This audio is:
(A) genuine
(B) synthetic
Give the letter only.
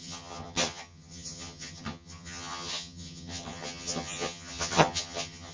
B